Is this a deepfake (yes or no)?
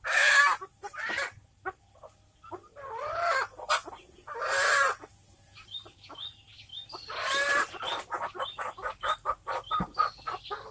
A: no